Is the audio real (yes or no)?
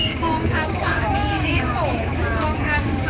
no